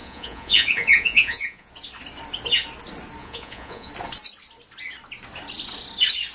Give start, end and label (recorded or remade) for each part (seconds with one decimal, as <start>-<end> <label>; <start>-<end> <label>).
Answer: 0.0-1.7 remade; 1.7-3.2 recorded; 3.2-3.9 remade; 3.9-6.3 recorded